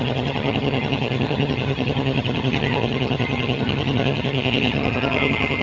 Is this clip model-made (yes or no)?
yes